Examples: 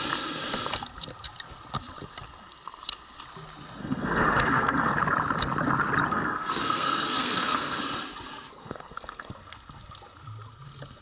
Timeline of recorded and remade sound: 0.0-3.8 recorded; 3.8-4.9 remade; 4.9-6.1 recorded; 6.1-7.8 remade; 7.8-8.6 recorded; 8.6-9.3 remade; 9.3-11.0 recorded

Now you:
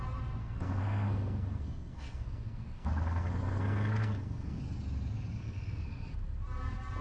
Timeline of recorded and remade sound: 0.0-0.4 recorded; 0.4-4.6 remade; 4.6-5.4 recorded; 5.4-6.4 remade; 6.4-7.0 recorded

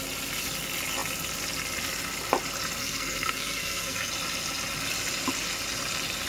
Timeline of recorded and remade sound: 0.0-2.8 recorded; 2.8-4.1 remade; 4.1-6.3 recorded